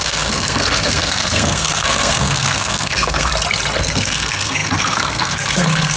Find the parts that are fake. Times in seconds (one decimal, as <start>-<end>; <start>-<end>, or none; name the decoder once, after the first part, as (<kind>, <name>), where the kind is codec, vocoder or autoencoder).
0.0-3.3 (codec, SNAC); 3.8-6.0